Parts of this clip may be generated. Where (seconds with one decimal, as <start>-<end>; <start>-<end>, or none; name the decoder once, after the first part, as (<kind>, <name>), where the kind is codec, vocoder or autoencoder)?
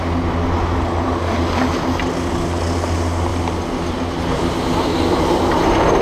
none